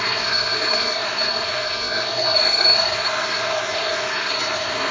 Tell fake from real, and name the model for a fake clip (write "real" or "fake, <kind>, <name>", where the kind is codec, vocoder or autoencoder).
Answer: fake, codec, SNAC